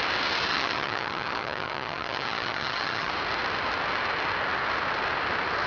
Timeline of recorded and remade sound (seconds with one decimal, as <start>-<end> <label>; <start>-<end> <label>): 0.0-0.5 recorded; 0.5-3.1 remade; 3.1-5.7 recorded